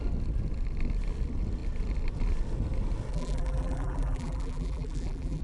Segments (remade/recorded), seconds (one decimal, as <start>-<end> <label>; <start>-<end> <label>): 0.0-3.1 recorded; 3.1-5.4 remade